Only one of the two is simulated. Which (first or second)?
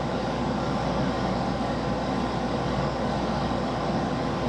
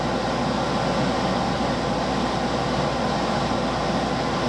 first